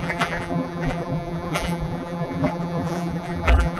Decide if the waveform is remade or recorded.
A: remade